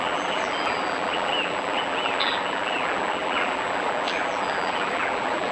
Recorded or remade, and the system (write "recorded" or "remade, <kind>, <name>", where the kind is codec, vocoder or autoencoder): remade, vocoder, BigVGAN v2